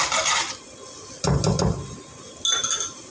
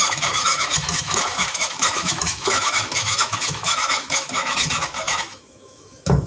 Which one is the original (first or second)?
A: first